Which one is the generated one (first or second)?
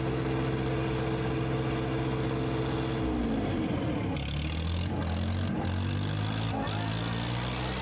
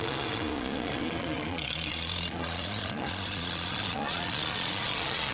second